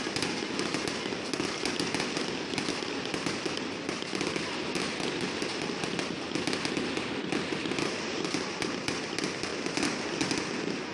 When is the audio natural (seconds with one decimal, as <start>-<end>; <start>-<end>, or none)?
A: 0.0-4.6; 5.7-10.9